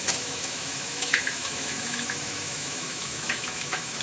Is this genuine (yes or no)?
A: no